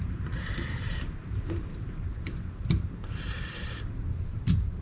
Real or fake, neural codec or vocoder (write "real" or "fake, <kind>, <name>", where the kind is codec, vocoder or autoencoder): fake, vocoder, BigVGAN v2